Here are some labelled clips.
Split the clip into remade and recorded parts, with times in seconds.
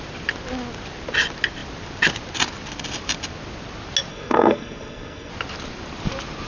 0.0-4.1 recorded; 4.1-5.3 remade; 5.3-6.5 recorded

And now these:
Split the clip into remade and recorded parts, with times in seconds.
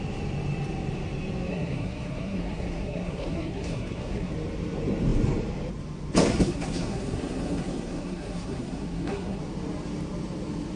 0.0-1.5 recorded; 1.5-4.3 remade; 4.3-6.3 recorded; 6.3-9.4 remade; 9.4-10.8 recorded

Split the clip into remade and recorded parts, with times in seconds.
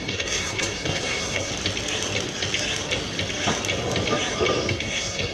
0.0-1.5 remade; 1.5-4.7 recorded; 4.7-5.3 remade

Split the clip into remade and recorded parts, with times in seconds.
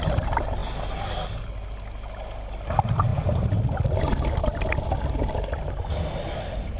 0.0-6.8 recorded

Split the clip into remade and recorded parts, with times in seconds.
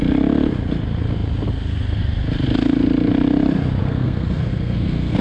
0.0-3.8 recorded; 3.8-5.2 remade